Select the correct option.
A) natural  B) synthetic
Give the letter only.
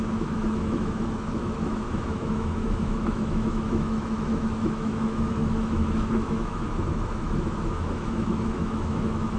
B